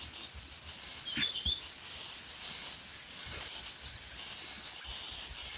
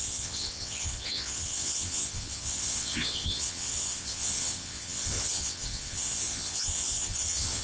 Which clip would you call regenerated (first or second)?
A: second